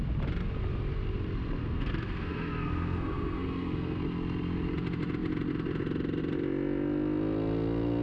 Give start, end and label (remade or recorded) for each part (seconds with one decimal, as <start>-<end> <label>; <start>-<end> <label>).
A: 0.0-1.6 recorded; 1.6-4.0 remade; 4.0-8.0 recorded